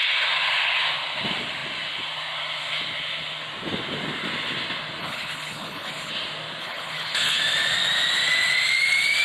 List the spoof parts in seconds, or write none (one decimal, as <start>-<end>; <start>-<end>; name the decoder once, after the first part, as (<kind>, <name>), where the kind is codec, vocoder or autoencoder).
5.0-6.1 (codec, HILCodec); 6.6-7.4